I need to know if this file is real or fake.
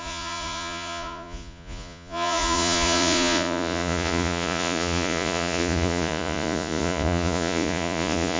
fake